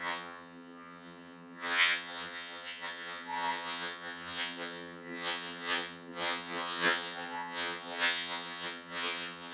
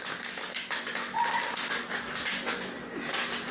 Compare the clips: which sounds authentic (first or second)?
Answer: second